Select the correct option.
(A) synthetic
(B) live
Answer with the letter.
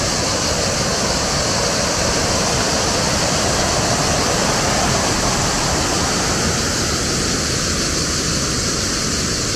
B